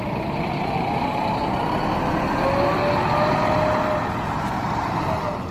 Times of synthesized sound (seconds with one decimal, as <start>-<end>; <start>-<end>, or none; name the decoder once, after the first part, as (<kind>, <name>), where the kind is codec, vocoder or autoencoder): 0.0-1.6 (vocoder, BigVGAN v2); 4.9-5.5